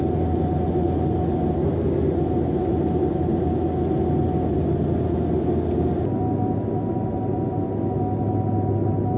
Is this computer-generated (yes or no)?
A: no